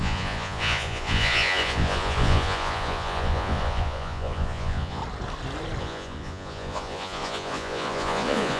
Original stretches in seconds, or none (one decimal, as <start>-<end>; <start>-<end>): 5.0-5.8